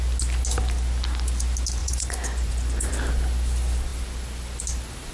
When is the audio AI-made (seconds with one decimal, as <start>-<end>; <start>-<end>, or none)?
1.8-2.9